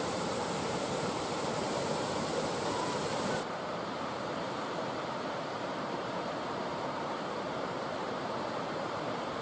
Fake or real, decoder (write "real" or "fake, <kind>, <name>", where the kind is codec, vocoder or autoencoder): fake, vocoder, BigVGAN v2